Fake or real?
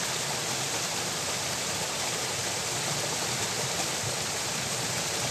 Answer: real